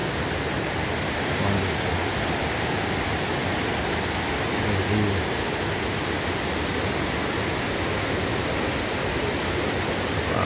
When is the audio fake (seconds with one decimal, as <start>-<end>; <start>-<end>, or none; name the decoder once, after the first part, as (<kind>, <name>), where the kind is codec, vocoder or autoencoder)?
0.0-1.4 (vocoder, BigVGAN v2)